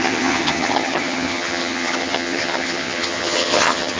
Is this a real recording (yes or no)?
no